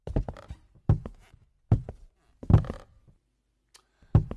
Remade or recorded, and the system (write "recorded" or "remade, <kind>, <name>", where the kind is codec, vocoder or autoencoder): recorded